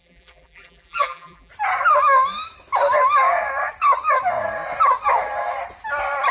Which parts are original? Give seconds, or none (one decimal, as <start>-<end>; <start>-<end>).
1.5-6.3